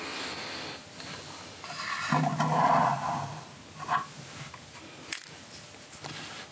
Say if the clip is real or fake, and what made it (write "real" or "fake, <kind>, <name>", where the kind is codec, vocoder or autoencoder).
real